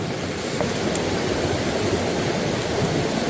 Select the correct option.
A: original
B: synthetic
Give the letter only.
A